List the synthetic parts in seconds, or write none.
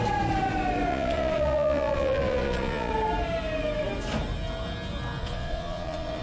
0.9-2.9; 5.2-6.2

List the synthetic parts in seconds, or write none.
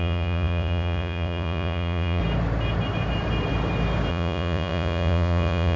0.0-2.2; 4.1-5.8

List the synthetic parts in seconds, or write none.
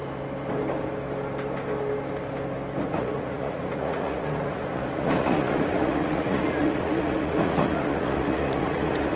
2.9-9.2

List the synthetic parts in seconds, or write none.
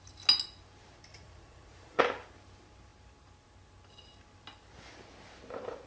1.1-2.0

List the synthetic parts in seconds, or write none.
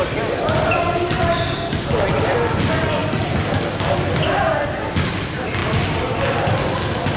none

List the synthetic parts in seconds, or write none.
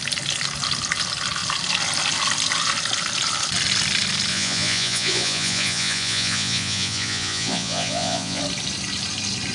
4.3-8.4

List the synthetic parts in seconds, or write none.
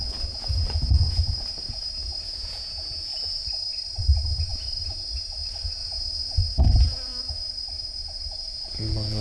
0.0-3.1; 4.0-9.2